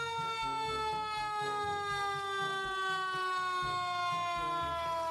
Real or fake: real